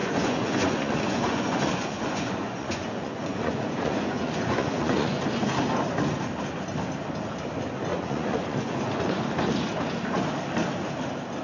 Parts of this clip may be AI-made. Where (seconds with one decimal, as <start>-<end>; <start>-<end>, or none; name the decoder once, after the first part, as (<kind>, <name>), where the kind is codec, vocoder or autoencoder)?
0.0-5.2 (vocoder, Vocos); 7.9-9.2